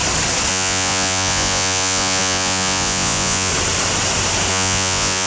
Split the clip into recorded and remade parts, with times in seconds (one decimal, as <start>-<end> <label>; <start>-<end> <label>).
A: 0.0-0.5 recorded; 0.5-3.5 remade; 3.5-4.5 recorded; 4.5-5.3 remade